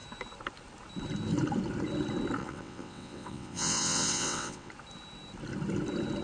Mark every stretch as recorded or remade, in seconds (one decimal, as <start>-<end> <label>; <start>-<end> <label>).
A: 0.0-2.4 recorded; 2.4-4.7 remade; 4.7-6.2 recorded